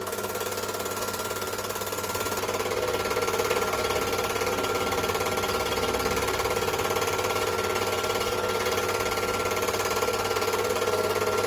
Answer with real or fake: real